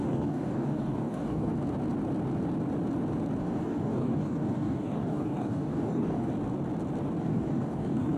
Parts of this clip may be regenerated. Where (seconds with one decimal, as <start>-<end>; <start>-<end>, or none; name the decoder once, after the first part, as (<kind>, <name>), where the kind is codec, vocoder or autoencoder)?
0.0-1.5 (codec, DAC); 3.4-6.3; 7.2-8.2